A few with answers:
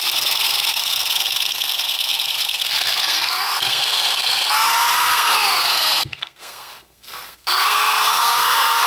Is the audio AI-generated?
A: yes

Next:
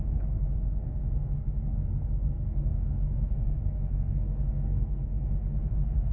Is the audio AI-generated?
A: yes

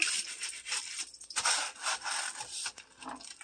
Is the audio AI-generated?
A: no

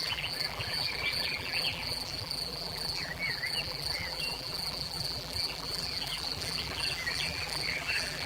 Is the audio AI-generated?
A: yes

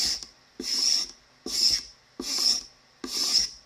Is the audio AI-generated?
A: no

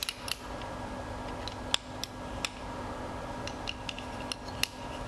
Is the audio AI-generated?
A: no